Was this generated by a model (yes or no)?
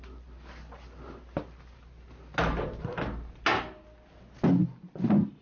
no